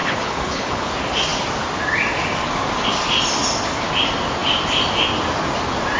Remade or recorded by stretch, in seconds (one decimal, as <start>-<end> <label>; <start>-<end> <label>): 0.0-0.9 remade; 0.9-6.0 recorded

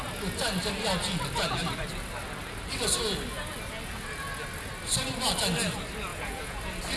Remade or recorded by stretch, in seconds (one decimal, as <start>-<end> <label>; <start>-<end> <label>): 0.0-6.1 recorded; 6.1-6.6 remade; 6.6-7.0 recorded

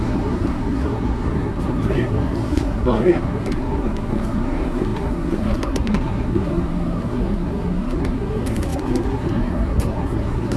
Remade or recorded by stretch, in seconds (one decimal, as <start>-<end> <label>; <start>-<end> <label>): 0.0-10.6 remade

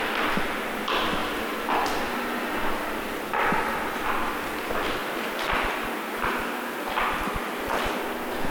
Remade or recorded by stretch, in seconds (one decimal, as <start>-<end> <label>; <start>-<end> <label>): 0.0-5.0 recorded; 5.0-8.0 remade; 8.0-8.5 recorded

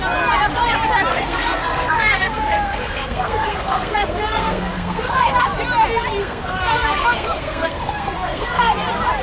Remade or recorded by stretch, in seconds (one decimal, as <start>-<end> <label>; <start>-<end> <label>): 0.0-1.1 recorded; 1.1-5.3 remade; 5.3-6.2 recorded; 6.2-8.7 remade; 8.7-9.2 recorded